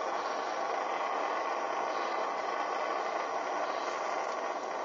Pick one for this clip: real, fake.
real